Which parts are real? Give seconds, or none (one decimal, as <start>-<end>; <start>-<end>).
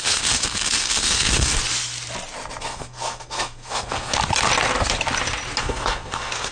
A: 1.5-2.6; 4.2-5.6